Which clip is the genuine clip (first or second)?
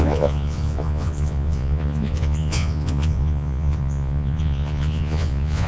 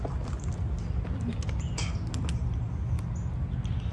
second